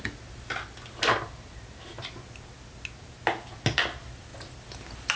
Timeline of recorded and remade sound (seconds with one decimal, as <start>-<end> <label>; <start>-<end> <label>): 0.0-5.2 recorded